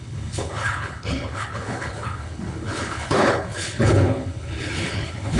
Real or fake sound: fake